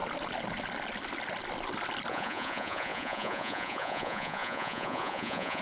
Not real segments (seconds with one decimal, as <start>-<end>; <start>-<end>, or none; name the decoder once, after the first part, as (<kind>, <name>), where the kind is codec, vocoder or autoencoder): 2.1-5.6 (vocoder, Vocos)